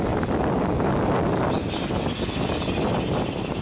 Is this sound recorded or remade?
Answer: recorded